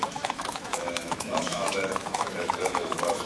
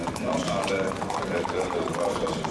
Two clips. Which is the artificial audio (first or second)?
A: first